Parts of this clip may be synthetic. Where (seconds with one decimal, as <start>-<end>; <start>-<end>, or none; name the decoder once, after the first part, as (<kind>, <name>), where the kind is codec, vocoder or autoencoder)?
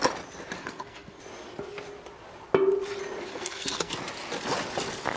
0.6-1.2 (codec, SNAC); 3.3-4.0